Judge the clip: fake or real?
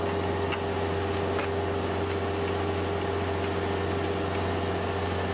real